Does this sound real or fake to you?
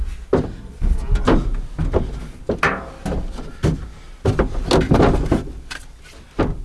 real